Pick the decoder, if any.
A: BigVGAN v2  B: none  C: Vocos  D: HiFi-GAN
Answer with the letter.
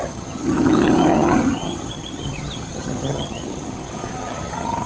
D